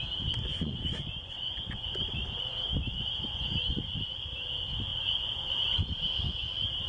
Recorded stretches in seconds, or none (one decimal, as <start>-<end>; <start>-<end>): 0.0-0.5; 3.8-4.9; 6.0-6.9